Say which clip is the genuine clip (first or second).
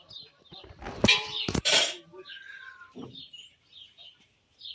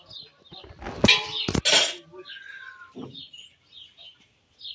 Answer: second